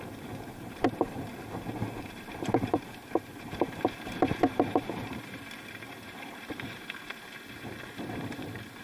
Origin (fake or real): fake